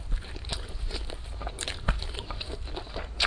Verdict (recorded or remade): remade